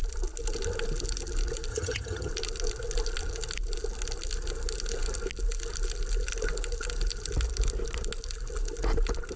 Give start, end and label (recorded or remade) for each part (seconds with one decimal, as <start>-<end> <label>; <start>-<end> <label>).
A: 0.0-1.7 recorded; 1.7-2.3 remade; 2.3-9.4 recorded